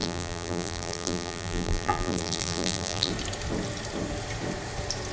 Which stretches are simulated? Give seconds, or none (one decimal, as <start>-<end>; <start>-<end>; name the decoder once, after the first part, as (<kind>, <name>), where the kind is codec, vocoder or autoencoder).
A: 0.0-3.1 (vocoder, BigVGAN v2)